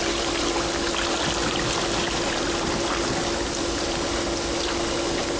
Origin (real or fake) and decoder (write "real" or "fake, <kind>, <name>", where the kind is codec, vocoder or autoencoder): real